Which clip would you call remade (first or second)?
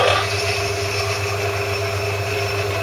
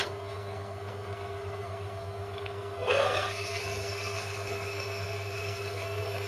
second